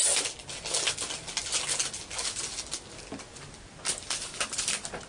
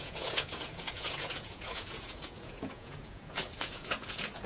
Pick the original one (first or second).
first